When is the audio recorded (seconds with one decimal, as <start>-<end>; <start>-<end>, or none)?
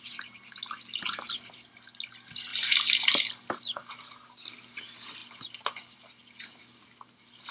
0.0-2.5; 3.3-3.8; 4.6-7.5